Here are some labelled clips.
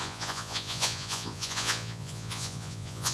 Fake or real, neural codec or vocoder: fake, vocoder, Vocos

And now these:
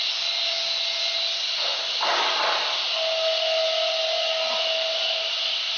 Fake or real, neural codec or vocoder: real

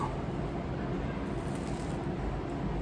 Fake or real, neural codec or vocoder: real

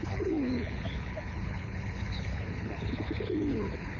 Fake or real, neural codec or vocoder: fake, codec, HILCodec